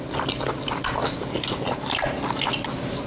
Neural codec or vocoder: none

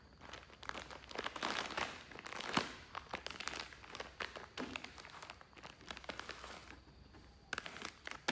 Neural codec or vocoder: none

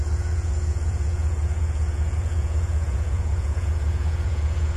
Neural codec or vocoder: vocoder, Vocos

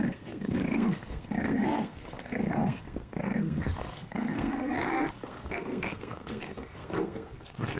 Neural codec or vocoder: codec, SNAC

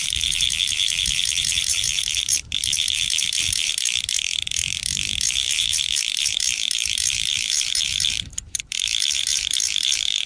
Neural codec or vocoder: vocoder, BigVGAN v2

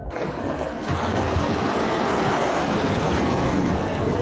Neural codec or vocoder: codec, SNAC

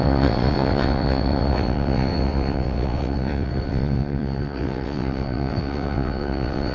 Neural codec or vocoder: vocoder, WaveNeXt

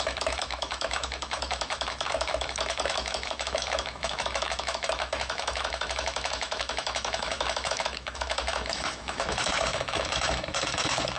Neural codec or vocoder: autoencoder, DAC-VAE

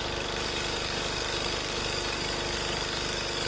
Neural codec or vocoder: codec, DAC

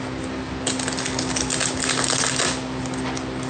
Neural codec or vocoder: none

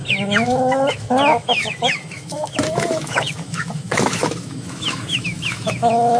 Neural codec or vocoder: autoencoder, DAC-VAE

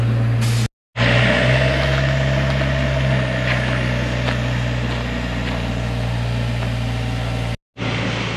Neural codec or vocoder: none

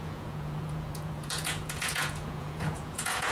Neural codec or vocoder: vocoder, Vocos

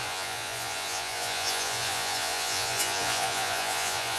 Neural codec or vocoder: vocoder, Vocos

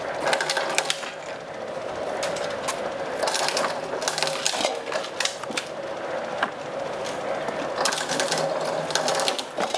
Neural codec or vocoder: none